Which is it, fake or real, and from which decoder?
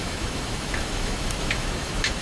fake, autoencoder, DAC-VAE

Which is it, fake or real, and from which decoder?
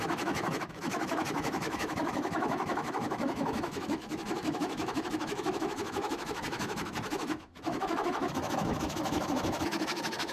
fake, autoencoder, DAC-VAE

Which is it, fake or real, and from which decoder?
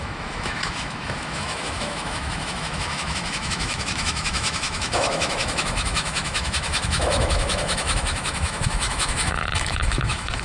fake, autoencoder, DAC-VAE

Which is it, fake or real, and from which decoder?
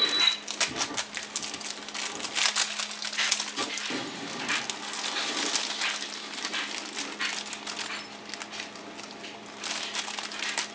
real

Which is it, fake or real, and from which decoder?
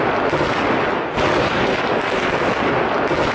real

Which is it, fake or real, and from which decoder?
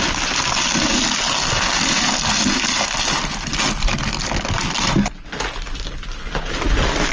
real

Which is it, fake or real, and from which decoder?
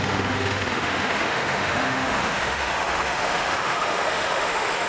fake, autoencoder, DAC-VAE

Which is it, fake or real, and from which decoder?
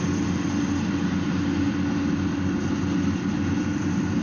real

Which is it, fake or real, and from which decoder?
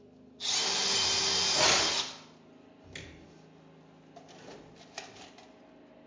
real